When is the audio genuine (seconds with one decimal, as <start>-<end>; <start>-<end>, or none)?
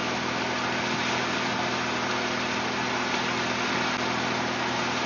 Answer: 0.0-5.1